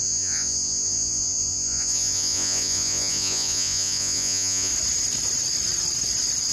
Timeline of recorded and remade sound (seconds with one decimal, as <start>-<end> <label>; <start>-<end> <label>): 0.0-4.7 remade; 4.7-6.5 recorded